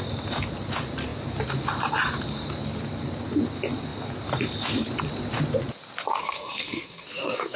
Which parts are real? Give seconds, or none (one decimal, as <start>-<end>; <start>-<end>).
0.0-6.2